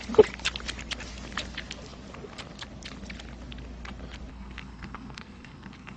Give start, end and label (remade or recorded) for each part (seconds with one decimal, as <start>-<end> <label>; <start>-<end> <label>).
0.0-4.3 recorded; 4.3-6.0 remade